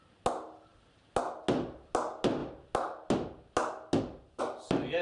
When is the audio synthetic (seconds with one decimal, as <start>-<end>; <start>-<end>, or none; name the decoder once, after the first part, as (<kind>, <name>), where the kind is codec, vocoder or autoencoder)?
none